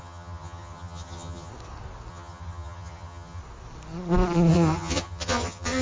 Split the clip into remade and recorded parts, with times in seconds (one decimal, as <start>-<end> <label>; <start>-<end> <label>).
0.0-1.5 remade; 1.5-2.1 recorded; 2.1-3.4 remade; 3.4-4.5 recorded; 4.5-5.8 remade